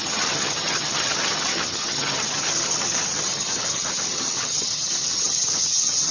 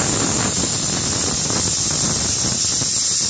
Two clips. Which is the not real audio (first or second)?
first